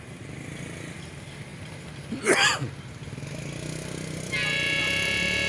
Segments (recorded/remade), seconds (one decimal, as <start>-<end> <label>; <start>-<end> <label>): 0.0-5.5 recorded